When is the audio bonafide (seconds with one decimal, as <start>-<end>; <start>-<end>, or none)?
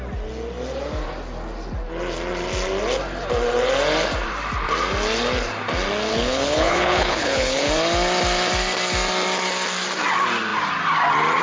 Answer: 0.0-6.1; 7.7-11.4